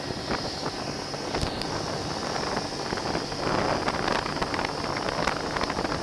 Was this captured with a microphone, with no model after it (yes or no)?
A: yes